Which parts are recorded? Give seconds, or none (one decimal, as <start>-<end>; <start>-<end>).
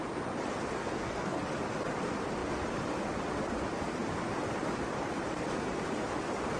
0.0-0.8; 1.4-6.6